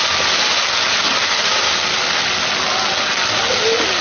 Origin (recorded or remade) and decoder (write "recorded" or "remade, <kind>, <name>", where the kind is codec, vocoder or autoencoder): recorded